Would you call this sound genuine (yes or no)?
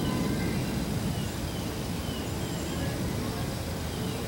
yes